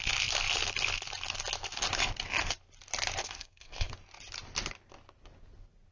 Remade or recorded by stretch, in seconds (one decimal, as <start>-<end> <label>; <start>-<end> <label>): 0.0-3.2 recorded; 3.2-3.9 remade; 3.9-5.9 recorded